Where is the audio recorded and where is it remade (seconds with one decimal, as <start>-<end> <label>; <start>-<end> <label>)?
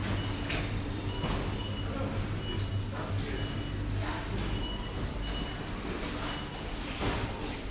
0.0-7.7 recorded